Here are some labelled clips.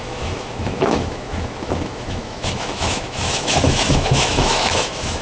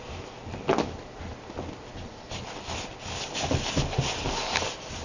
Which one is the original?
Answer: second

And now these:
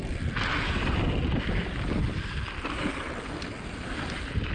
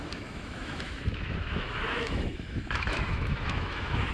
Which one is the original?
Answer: first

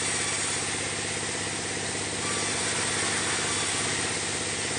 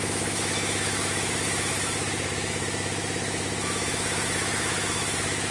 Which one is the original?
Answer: first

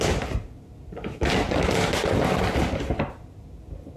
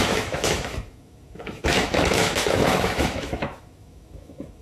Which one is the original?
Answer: first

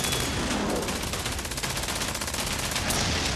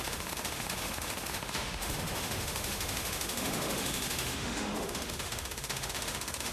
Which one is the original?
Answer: first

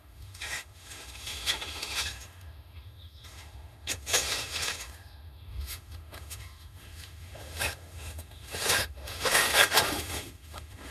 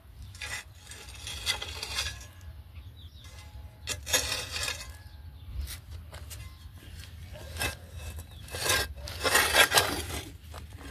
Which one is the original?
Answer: second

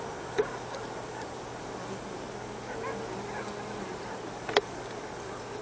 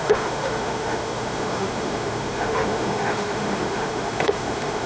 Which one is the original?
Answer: first